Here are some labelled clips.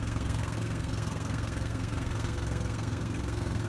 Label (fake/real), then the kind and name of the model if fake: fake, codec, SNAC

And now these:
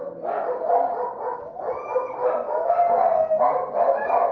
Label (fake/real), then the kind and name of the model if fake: real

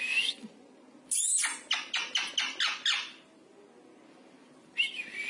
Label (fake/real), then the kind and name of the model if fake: real